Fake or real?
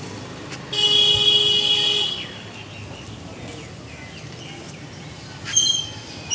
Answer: real